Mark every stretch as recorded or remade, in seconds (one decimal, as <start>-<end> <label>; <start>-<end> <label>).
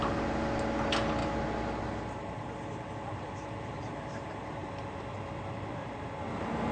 0.0-6.7 recorded